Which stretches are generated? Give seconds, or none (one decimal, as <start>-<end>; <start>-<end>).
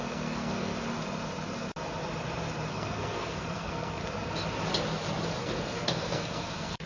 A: 0.0-0.7; 2.7-4.0; 5.4-6.9